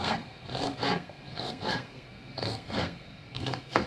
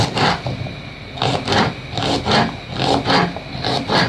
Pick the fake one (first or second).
first